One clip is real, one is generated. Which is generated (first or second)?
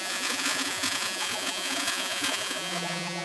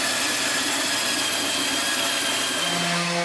first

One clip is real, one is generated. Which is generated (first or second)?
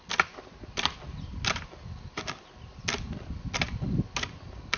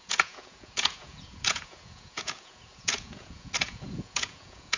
second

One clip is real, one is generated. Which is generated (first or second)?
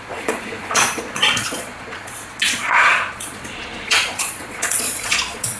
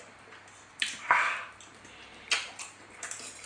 first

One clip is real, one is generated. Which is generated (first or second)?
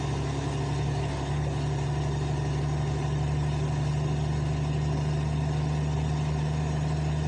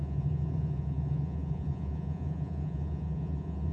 second